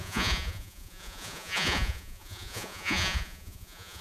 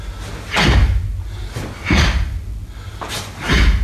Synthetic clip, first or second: first